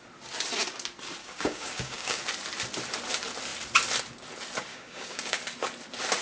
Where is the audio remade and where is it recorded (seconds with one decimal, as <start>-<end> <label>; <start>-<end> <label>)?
0.0-1.2 recorded; 1.2-2.2 remade; 2.2-4.7 recorded; 4.7-5.4 remade; 5.4-6.2 recorded